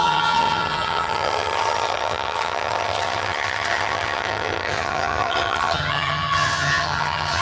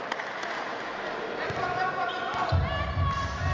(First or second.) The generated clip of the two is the first